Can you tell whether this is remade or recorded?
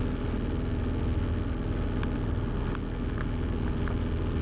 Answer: recorded